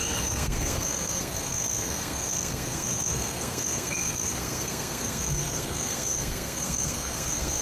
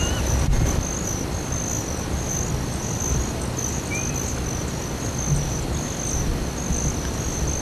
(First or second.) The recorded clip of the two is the second